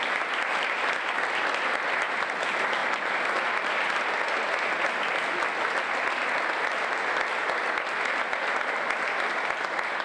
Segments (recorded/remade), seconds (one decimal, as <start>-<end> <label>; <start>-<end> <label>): 0.0-10.0 recorded